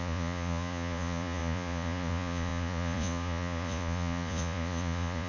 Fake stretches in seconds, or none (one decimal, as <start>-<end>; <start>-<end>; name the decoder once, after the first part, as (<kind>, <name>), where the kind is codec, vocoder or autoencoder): 0.0-5.3 (vocoder, Vocos)